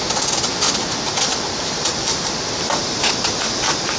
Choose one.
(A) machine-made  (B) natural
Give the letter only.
B